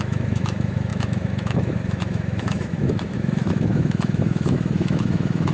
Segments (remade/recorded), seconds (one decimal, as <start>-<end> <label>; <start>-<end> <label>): 0.0-5.5 remade